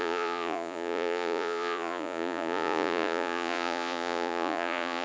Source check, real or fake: fake